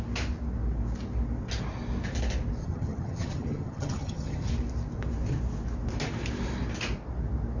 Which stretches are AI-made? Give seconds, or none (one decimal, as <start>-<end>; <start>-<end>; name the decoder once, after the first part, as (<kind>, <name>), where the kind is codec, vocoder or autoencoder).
2.6-4.5 (vocoder, HiFi-GAN)